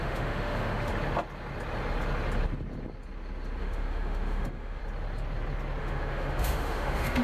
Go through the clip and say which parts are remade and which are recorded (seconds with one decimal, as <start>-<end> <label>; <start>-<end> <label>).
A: 0.0-0.9 remade; 0.9-3.6 recorded; 3.6-4.8 remade; 4.8-5.8 recorded; 5.8-7.2 remade